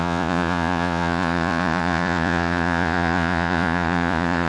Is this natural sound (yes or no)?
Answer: no